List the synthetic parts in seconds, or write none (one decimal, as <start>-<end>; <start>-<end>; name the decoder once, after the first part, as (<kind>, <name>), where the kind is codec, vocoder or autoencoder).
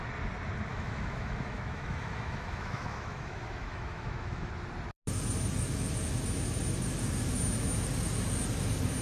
0.7-4.5 (autoencoder, DAC-VAE)